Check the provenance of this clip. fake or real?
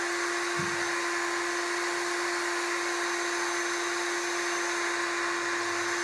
real